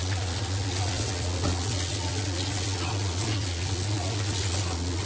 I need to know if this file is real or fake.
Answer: fake